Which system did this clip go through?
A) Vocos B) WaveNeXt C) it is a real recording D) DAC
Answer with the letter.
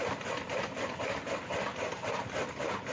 C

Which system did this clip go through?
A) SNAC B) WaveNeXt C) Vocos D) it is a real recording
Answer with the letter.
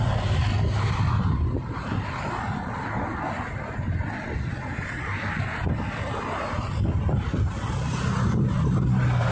D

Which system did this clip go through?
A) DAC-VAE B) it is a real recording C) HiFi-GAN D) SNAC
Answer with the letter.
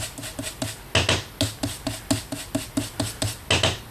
B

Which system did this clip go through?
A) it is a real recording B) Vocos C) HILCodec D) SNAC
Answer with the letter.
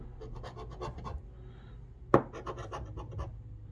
A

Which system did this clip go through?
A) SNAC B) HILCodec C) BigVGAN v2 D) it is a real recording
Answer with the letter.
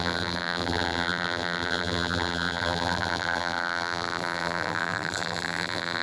C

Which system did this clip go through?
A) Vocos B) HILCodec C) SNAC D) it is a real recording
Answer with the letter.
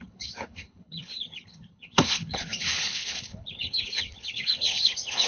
B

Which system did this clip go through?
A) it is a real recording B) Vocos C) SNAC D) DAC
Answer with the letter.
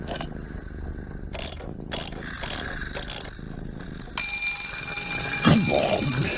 A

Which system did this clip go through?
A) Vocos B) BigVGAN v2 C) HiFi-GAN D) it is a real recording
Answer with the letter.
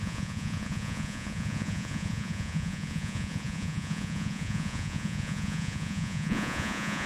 A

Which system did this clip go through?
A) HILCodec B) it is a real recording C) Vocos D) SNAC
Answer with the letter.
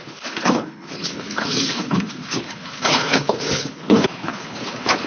A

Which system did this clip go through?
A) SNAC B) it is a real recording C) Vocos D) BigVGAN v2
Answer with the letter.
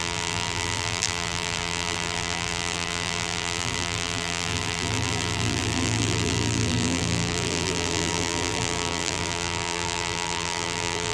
D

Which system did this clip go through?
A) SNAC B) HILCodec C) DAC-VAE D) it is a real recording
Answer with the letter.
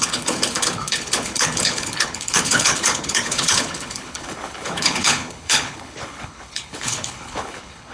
B